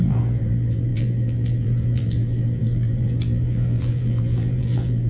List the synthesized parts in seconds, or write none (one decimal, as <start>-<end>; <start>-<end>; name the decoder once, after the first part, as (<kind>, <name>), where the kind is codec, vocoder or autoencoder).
0.0-5.1 (vocoder, BigVGAN v2)